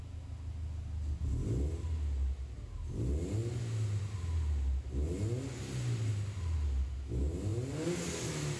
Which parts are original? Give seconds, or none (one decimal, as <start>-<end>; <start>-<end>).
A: 0.0-8.6